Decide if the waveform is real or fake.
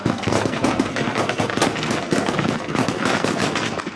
fake